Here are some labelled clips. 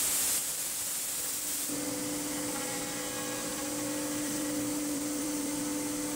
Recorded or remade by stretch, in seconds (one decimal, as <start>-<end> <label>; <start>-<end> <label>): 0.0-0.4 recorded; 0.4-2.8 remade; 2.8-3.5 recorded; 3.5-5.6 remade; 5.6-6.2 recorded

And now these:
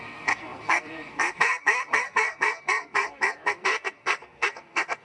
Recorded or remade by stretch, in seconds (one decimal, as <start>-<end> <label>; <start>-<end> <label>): 0.0-5.0 remade

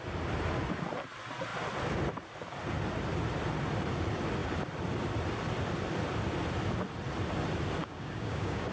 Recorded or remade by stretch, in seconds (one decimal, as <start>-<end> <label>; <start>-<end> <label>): 0.0-7.8 recorded; 7.8-8.7 remade

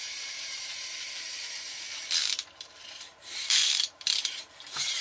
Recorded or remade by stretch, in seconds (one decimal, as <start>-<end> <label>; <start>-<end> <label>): 0.0-1.8 remade; 1.8-2.2 recorded; 2.2-4.4 remade; 4.4-5.0 recorded